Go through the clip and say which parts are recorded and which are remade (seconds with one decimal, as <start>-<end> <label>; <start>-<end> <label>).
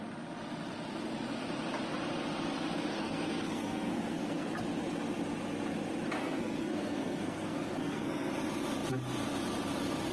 0.0-2.9 recorded; 2.9-4.5 remade; 4.5-6.2 recorded; 6.2-8.3 remade; 8.3-10.1 recorded